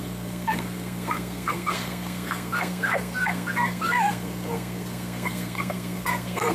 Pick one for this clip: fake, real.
fake